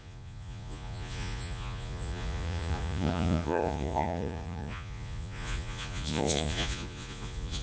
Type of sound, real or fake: fake